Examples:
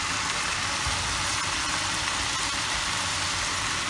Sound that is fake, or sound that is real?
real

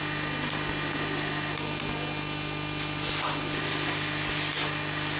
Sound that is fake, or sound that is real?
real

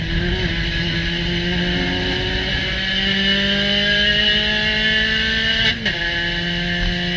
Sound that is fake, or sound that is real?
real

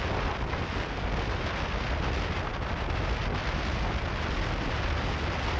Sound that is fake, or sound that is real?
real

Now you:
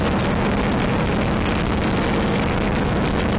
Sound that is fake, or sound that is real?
real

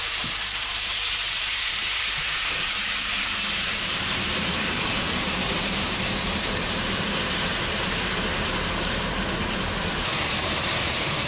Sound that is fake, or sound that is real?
fake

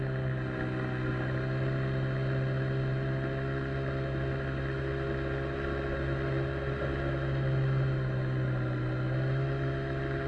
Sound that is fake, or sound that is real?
real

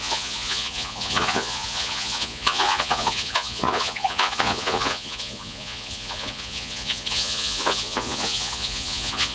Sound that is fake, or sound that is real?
fake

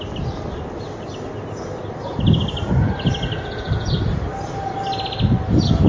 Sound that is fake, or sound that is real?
real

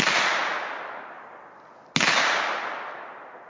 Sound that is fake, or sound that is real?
real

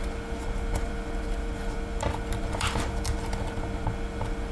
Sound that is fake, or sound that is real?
fake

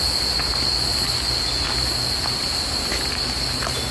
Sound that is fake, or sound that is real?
real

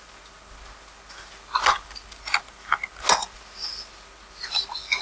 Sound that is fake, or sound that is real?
real